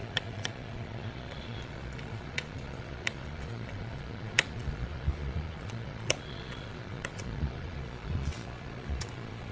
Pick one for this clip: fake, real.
fake